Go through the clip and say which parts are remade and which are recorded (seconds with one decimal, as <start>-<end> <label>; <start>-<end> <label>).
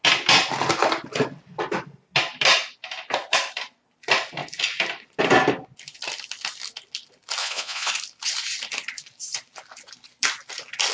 0.0-7.4 recorded; 7.4-7.9 remade; 7.9-10.9 recorded